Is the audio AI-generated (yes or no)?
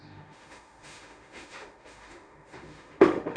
yes